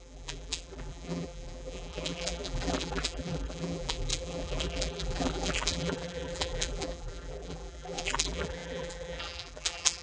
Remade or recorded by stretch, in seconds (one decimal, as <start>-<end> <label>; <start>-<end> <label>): 0.0-10.0 remade